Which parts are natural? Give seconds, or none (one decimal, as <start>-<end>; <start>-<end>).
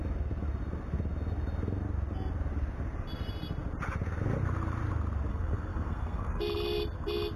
0.0-5.3; 6.4-7.4